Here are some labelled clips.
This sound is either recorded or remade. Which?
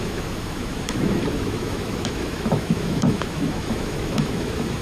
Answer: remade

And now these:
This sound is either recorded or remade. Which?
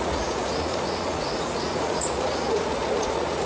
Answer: remade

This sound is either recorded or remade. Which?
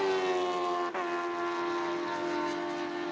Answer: recorded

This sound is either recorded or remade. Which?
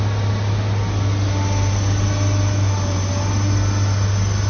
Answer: recorded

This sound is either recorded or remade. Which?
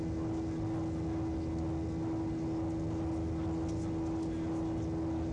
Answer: recorded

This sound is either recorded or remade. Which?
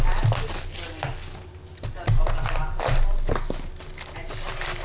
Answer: recorded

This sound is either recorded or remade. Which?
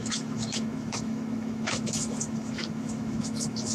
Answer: remade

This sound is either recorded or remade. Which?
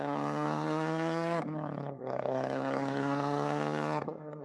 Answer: remade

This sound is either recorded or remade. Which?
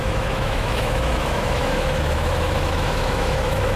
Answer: remade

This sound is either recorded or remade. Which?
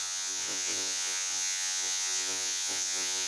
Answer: remade